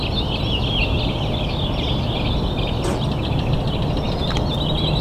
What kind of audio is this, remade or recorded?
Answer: recorded